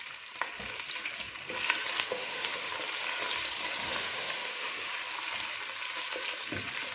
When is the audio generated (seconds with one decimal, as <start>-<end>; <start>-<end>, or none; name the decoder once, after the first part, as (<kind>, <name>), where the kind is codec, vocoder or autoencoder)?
2.1-2.7 (autoencoder, DAC-VAE); 3.8-4.9